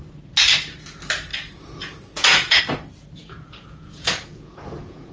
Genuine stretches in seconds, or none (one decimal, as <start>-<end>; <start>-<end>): 0.0-1.3; 2.6-3.2